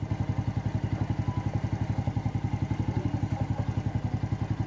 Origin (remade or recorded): recorded